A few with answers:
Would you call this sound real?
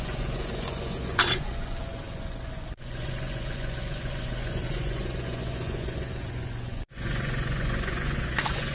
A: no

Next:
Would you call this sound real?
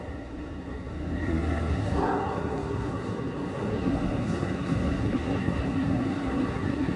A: no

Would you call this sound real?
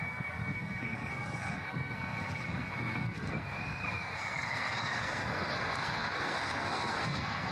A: no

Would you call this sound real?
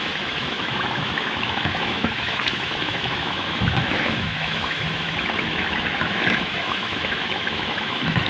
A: no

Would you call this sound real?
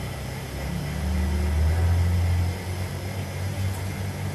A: yes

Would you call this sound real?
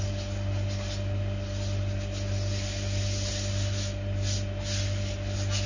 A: yes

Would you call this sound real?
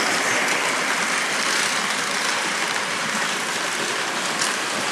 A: yes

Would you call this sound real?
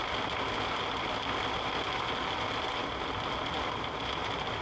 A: yes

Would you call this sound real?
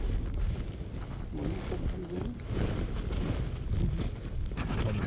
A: yes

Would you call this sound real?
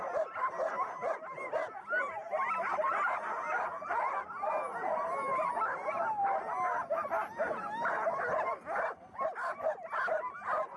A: yes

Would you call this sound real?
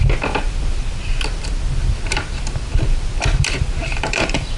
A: yes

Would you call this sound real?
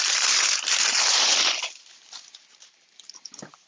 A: no